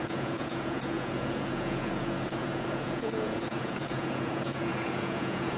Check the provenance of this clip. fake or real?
fake